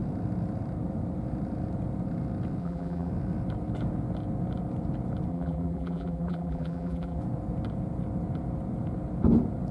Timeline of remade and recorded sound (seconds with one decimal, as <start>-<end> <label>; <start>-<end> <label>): 0.0-2.6 recorded; 2.6-3.1 remade; 3.1-5.3 recorded; 5.3-7.2 remade; 7.2-9.7 recorded